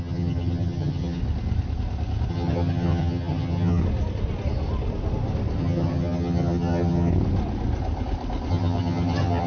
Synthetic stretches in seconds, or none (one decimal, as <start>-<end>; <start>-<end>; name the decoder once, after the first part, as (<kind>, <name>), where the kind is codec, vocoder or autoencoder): 0.0-1.2 (vocoder, HiFi-GAN); 2.3-3.8; 5.6-7.1; 8.5-9.5